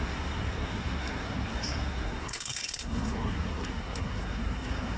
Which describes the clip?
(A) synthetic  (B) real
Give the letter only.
A